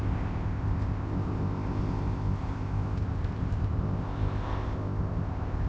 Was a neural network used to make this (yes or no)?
yes